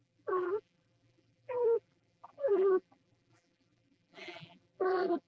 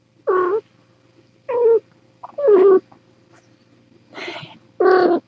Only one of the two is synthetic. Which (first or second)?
first